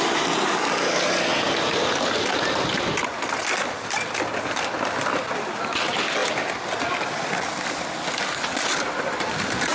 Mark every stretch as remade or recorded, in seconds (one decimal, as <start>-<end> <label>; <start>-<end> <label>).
0.0-9.7 recorded